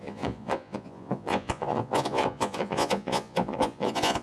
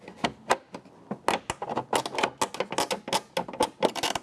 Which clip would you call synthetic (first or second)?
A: first